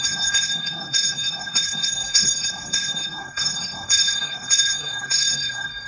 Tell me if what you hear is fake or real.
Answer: fake